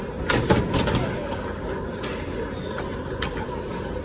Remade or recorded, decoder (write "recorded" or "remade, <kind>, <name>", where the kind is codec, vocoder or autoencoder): recorded